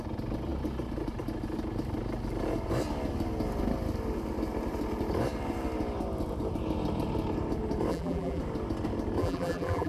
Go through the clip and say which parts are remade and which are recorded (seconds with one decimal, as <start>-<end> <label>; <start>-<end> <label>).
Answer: 0.0-7.9 recorded; 7.9-8.4 remade; 8.4-9.2 recorded; 9.2-9.9 remade